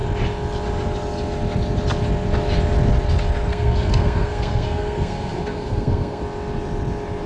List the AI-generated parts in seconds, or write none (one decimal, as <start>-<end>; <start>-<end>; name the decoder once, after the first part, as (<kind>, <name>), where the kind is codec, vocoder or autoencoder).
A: 3.5-6.2 (codec, SNAC)